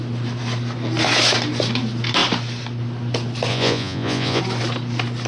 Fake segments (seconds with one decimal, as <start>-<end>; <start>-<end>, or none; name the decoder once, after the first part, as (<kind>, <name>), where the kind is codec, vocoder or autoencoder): 3.5-4.4 (vocoder, Vocos)